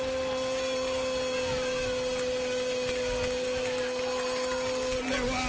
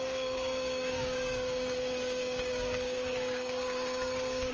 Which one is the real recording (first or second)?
first